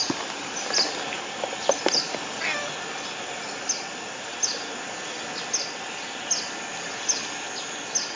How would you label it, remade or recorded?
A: recorded